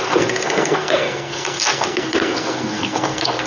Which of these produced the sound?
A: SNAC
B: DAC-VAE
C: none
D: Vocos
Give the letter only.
A